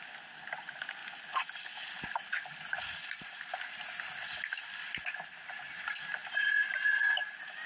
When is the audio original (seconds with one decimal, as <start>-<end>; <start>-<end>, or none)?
0.0-6.2; 6.9-7.7